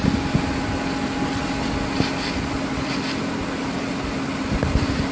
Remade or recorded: remade